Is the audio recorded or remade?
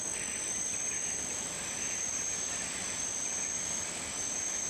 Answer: recorded